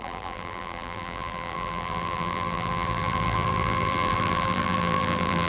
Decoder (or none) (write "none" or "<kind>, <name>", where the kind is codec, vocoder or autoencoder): vocoder, BigVGAN v2